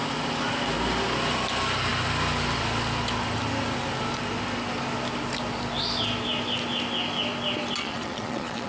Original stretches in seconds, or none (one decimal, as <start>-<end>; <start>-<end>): 0.0-7.8